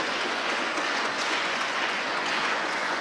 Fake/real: fake